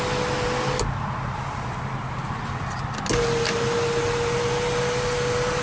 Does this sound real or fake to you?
real